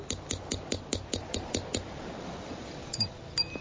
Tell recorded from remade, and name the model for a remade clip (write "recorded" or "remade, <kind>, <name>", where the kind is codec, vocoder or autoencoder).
recorded